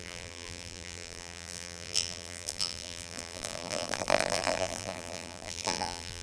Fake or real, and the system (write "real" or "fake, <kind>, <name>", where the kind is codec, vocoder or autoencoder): fake, vocoder, BigVGAN v2